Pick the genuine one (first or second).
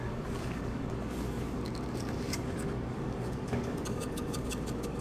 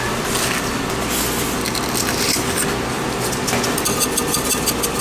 second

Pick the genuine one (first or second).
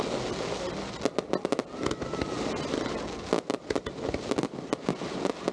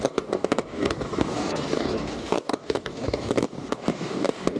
first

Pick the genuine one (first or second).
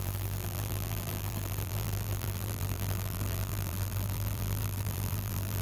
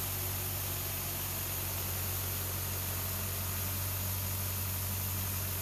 second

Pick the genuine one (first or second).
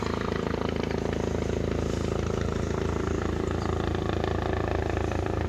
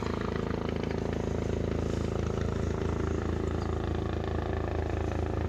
second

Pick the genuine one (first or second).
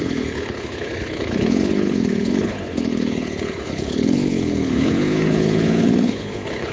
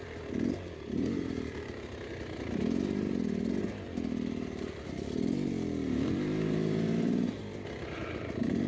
second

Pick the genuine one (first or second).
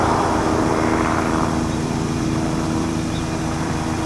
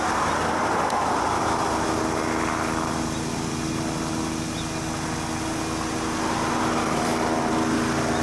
second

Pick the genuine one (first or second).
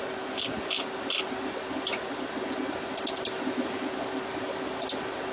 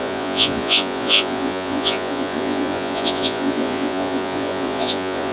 first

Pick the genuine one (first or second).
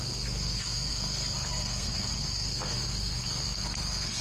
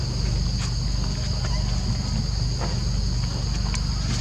second